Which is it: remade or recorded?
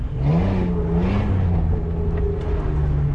recorded